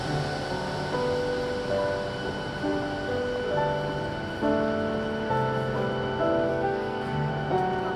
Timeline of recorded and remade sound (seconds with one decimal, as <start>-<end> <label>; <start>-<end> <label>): 0.0-6.5 recorded; 6.5-7.3 remade; 7.3-8.0 recorded